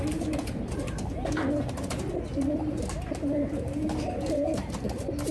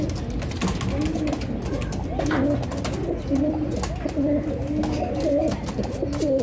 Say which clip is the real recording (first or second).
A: second